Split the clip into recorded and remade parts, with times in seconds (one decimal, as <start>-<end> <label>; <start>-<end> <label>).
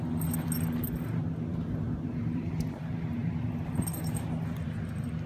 0.0-1.5 recorded; 1.5-3.8 remade; 3.8-5.3 recorded